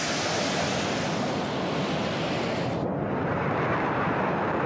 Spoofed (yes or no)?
yes